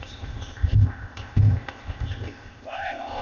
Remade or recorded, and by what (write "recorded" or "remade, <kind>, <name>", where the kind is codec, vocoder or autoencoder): remade, codec, ZipCodec